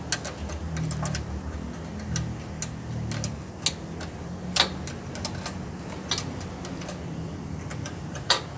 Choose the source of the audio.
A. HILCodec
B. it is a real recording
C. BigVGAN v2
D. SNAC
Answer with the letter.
B